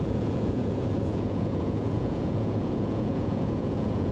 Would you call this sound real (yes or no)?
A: no